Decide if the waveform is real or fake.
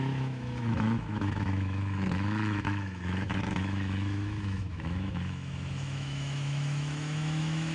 fake